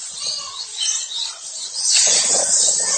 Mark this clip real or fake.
fake